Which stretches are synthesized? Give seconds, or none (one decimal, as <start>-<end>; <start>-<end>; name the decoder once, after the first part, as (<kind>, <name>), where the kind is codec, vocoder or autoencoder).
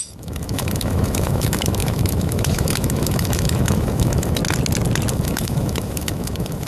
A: 0.0-4.4 (autoencoder, DAC-VAE); 5.1-6.7